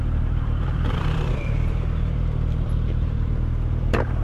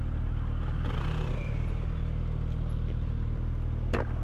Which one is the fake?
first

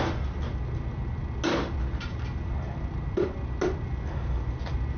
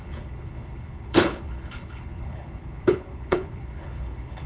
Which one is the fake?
second